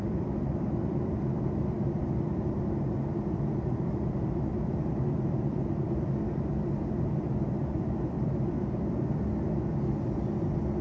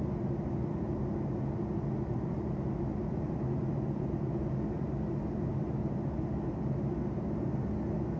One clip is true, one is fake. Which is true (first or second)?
second